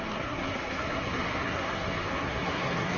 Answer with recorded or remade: remade